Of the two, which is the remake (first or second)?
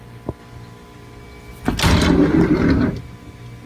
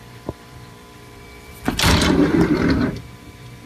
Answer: second